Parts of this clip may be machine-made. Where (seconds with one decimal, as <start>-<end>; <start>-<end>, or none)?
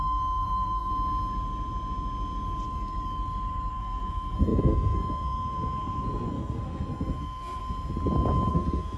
0.0-0.9; 3.7-7.6; 8.5-9.0